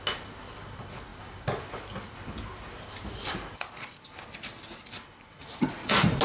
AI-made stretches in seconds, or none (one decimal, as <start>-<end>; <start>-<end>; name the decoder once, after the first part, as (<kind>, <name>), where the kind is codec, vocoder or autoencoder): 5.4-6.2 (vocoder, Vocos)